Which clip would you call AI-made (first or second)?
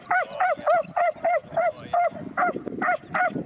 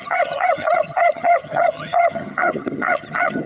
second